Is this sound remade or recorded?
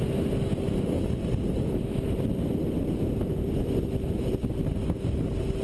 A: recorded